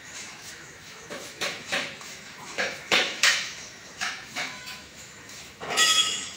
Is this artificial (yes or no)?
yes